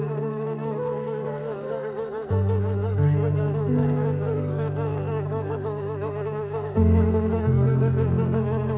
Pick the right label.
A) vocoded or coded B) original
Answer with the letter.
A